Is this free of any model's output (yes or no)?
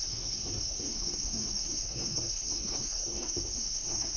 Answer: no